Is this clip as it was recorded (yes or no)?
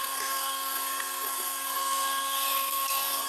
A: no